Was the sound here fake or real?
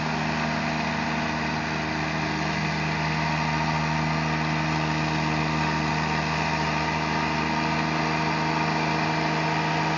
real